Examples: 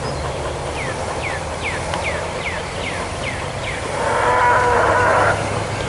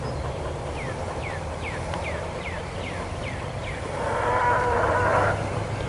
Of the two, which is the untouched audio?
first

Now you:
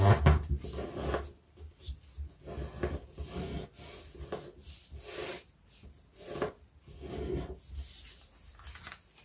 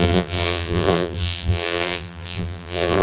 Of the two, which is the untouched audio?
first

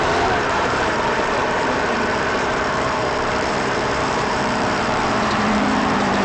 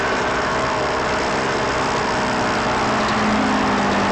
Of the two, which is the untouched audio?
second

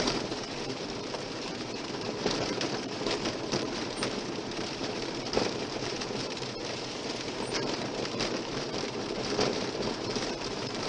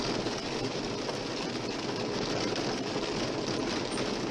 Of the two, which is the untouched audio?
second